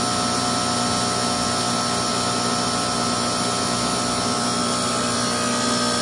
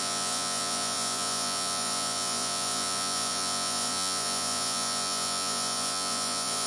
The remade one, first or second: second